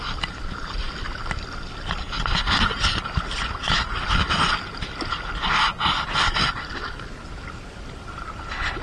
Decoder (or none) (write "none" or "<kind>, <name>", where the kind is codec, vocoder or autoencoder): none